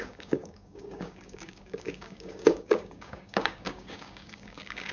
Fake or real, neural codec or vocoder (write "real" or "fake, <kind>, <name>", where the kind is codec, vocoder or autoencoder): fake, codec, DAC